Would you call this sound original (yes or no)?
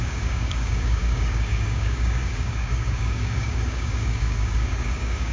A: no